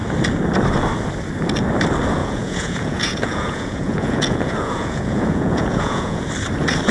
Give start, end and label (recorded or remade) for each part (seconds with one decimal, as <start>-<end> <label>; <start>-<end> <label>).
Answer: 0.0-2.2 recorded; 2.2-6.3 remade; 6.3-6.9 recorded